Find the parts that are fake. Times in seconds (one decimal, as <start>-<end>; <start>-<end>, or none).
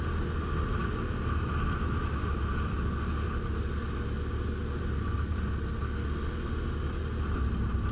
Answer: none